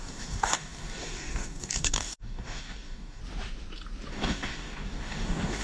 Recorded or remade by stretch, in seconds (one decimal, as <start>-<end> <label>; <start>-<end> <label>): 0.0-3.2 remade; 3.2-4.1 recorded; 4.1-5.6 remade